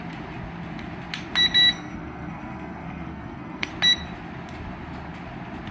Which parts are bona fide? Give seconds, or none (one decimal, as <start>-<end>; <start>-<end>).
0.0-1.7; 3.7-5.7